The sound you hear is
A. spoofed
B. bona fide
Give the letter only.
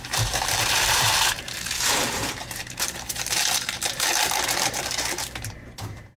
A